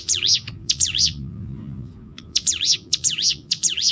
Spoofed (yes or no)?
yes